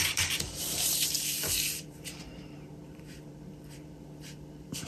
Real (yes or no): no